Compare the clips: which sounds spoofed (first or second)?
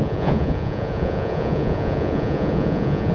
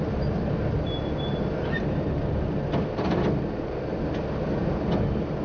first